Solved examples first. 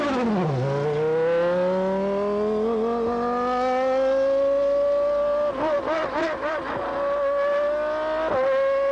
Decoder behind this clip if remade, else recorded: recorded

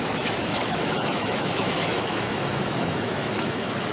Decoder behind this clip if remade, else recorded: remade, autoencoder, DAC-VAE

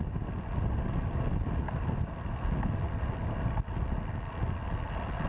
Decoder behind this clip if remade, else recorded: recorded